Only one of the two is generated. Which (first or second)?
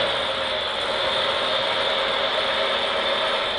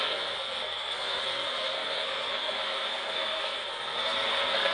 second